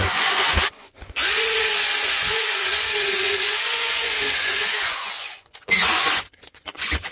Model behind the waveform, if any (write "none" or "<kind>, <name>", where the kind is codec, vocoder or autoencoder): vocoder, Vocos